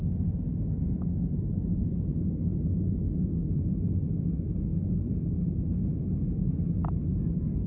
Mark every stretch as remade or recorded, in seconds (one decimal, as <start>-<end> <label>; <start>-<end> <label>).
0.0-7.7 recorded